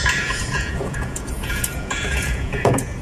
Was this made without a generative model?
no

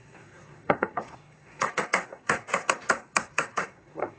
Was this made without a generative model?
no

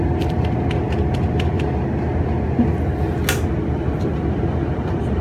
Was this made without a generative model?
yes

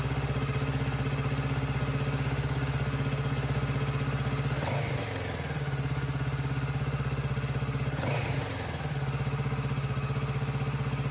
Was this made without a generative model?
yes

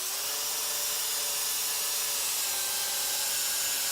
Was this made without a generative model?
yes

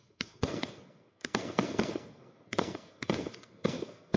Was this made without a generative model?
no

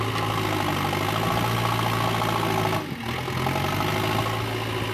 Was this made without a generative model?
yes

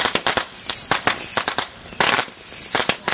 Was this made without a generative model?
yes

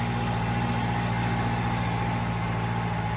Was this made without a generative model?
yes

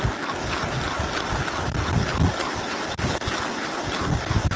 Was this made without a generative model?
yes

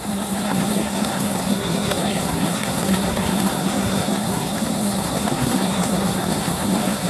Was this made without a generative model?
no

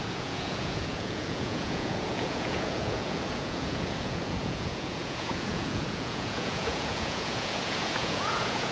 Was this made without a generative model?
no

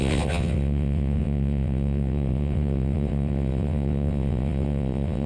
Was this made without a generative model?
no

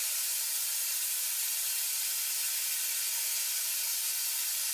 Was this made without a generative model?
yes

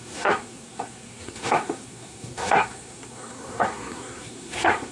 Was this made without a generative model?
no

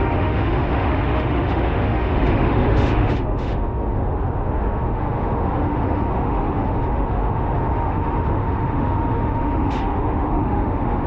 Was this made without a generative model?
no